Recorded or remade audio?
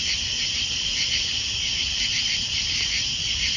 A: remade